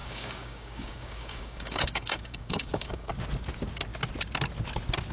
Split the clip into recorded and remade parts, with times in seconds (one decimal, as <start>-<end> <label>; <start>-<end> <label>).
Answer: 0.0-3.1 remade; 3.1-5.1 recorded